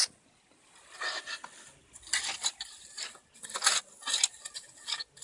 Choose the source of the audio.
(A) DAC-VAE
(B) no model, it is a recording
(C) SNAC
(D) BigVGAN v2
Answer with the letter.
B